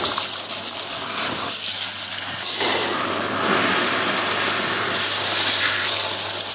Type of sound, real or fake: real